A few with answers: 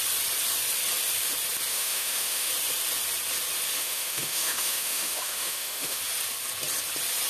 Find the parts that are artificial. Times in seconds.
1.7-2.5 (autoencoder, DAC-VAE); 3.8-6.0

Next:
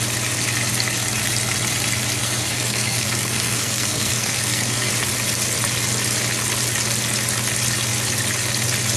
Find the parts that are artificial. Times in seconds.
2.2-4.9 (codec, SNAC)

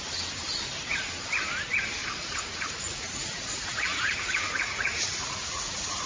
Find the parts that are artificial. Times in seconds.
2.0-6.1 (vocoder, Vocos)

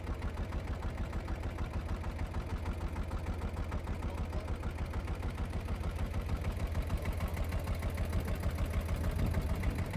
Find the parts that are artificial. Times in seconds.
0.0-2.5 (vocoder, BigVGAN v2); 5.0-7.3; 9.5-10.0

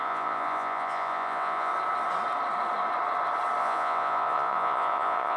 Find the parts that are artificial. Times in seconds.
0.0-1.7 (vocoder, Vocos); 3.6-5.4

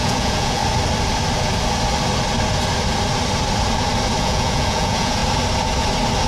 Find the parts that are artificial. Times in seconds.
0.0-0.6 (vocoder, Vocos); 4.2-5.2